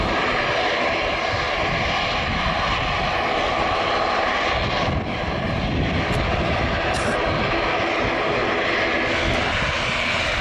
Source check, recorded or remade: recorded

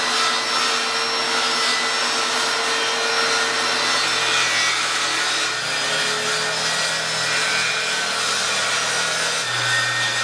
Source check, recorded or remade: recorded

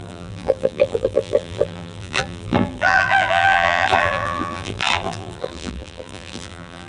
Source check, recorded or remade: remade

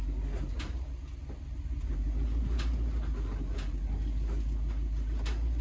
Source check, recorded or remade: recorded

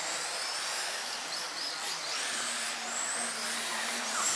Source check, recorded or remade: recorded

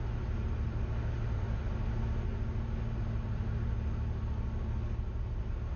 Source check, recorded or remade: recorded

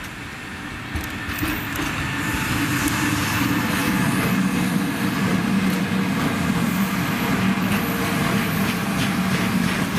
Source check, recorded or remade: recorded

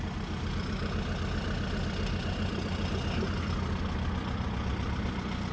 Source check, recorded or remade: recorded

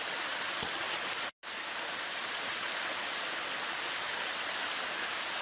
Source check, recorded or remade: recorded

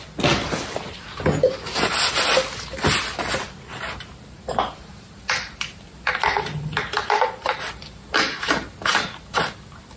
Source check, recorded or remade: recorded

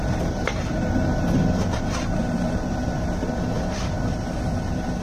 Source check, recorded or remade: remade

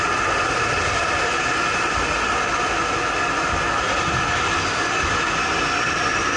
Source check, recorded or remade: recorded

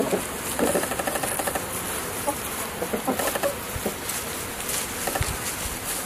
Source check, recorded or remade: recorded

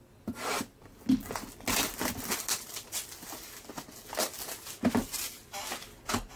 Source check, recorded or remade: recorded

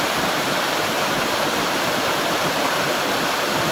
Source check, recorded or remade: remade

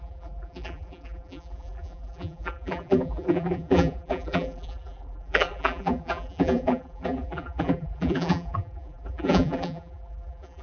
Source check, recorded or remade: remade